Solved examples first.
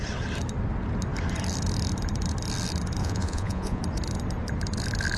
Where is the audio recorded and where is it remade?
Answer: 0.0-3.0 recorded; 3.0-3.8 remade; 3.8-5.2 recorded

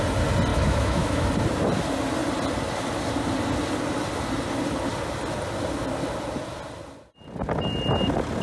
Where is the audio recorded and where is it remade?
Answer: 0.0-0.5 recorded; 0.5-1.3 remade; 1.3-8.4 recorded

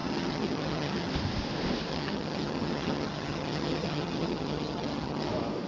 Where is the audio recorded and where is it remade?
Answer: 0.0-1.1 remade; 1.1-1.9 recorded; 1.9-5.3 remade; 5.3-5.7 recorded

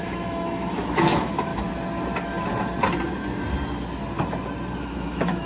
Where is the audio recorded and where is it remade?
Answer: 0.0-1.5 remade; 1.5-4.8 recorded; 4.8-5.5 remade

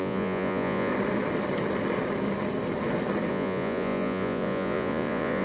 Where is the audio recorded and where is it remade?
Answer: 0.0-0.9 remade; 0.9-3.3 recorded; 3.3-5.4 remade